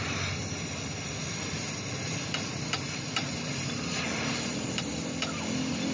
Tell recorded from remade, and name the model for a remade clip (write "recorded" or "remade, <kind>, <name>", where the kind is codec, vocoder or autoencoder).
remade, vocoder, BigVGAN v2